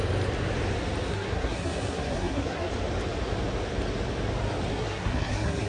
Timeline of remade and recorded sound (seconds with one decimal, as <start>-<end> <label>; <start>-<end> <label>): 0.0-1.1 recorded; 1.1-2.7 remade; 2.7-4.7 recorded; 4.7-5.7 remade